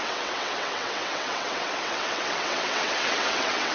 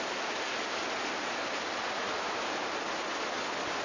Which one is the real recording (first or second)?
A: second